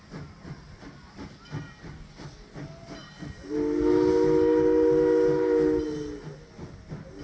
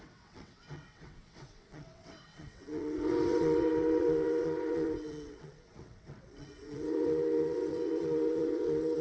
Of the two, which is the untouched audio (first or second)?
first